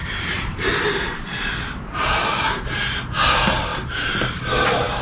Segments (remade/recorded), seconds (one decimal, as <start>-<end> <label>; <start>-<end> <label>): 0.0-3.0 remade; 3.0-3.7 recorded; 3.7-4.4 remade; 4.4-5.0 recorded